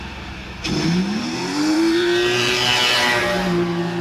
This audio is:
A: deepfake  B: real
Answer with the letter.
A